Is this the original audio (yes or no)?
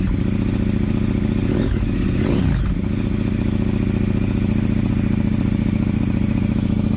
yes